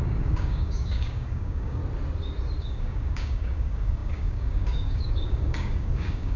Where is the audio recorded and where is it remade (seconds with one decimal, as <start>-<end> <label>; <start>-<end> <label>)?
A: 0.0-1.8 remade; 1.8-2.6 recorded; 2.6-6.4 remade